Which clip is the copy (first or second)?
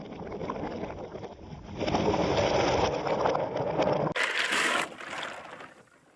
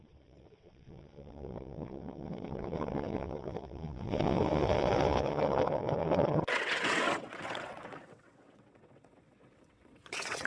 second